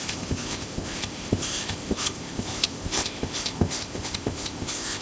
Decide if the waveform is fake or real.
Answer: fake